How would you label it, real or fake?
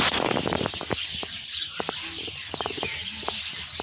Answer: real